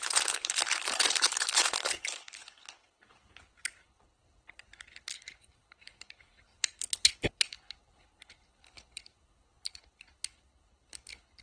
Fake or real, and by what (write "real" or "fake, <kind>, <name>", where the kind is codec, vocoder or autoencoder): fake, codec, HILCodec